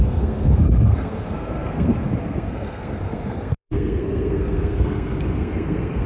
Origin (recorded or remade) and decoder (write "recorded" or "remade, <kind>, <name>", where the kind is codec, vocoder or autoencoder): remade, codec, SNAC